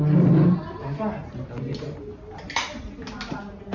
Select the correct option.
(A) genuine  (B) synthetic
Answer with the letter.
A